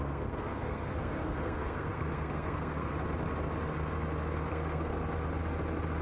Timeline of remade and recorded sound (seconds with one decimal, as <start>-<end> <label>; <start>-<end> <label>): 0.0-2.9 remade; 2.9-4.5 recorded; 4.5-4.9 remade; 4.9-6.0 recorded